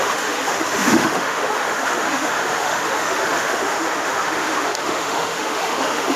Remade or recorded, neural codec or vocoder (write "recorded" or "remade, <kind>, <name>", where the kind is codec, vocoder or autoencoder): remade, autoencoder, DAC-VAE